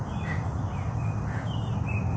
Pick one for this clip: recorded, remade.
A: recorded